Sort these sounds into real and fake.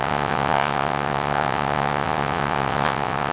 fake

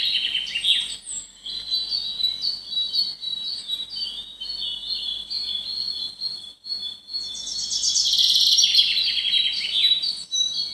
real